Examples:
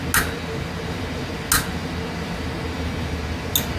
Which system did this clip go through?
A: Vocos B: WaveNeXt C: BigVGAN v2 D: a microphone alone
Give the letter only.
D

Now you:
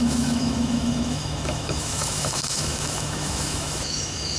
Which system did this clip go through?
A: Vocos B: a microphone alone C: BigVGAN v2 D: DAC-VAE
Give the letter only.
D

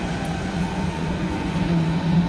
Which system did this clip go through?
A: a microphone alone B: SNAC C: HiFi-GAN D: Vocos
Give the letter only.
D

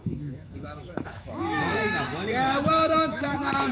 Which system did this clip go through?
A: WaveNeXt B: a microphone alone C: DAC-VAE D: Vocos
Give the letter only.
C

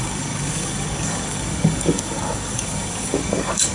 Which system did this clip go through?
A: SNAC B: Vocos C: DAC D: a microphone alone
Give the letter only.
C